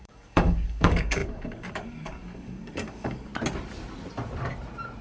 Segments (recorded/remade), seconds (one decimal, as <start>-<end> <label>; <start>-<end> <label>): 0.0-3.3 remade; 3.3-5.0 recorded